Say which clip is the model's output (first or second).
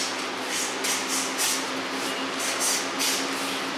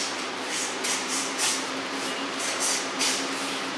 second